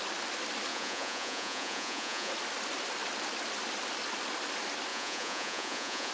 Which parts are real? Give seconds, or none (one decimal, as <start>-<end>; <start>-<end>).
0.0-0.7; 2.3-4.9